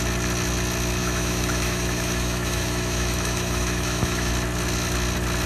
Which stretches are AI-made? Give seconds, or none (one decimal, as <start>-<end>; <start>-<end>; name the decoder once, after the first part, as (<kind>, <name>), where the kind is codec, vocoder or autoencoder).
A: 1.0-4.3 (autoencoder, DAC-VAE)